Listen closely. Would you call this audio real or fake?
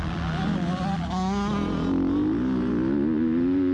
real